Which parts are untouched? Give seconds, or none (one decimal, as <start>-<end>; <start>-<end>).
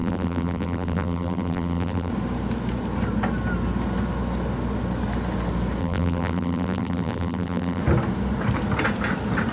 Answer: 2.1-5.8; 7.8-9.5